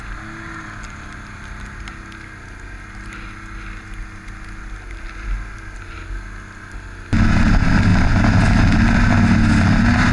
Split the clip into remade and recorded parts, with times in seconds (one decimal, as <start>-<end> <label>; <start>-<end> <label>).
0.0-10.1 recorded